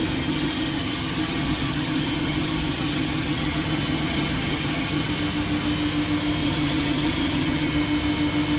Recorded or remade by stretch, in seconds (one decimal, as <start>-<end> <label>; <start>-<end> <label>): 0.0-5.1 remade; 5.1-6.4 recorded; 6.4-7.7 remade; 7.7-8.6 recorded